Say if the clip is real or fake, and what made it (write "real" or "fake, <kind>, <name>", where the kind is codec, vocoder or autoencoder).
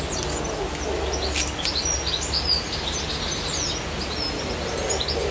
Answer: real